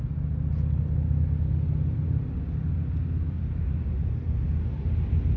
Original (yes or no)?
yes